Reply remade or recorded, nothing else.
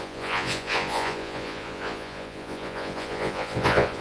remade